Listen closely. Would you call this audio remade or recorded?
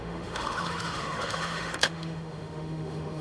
remade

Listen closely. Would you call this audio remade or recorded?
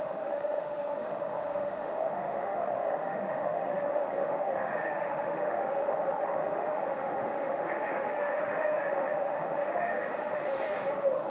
remade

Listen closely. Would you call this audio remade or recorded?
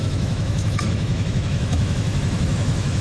remade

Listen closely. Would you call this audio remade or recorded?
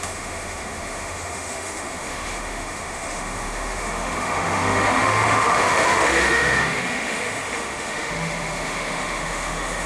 remade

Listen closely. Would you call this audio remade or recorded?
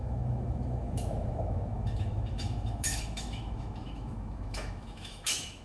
remade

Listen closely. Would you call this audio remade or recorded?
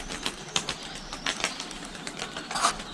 recorded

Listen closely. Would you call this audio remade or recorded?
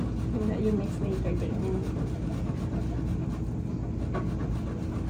recorded